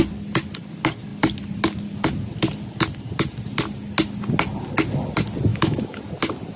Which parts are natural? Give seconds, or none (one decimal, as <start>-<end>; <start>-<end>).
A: 0.0-5.5; 6.0-6.6